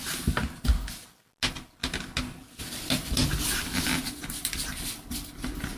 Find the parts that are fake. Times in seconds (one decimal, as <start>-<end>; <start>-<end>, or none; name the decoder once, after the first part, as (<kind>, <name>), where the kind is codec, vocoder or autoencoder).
none